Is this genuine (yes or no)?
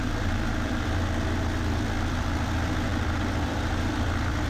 no